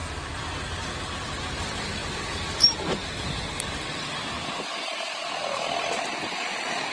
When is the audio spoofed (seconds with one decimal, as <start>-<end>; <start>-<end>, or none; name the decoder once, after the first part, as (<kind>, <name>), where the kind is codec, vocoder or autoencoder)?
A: none